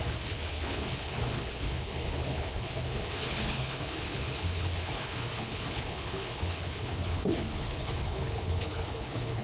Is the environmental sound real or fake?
fake